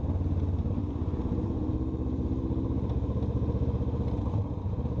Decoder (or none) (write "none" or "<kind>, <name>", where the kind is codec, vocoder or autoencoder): none